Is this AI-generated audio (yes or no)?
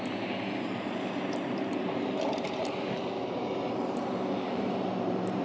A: yes